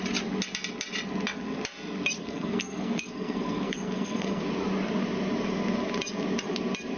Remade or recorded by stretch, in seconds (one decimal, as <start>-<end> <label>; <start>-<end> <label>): 0.0-2.2 recorded; 2.2-4.4 remade; 4.4-7.0 recorded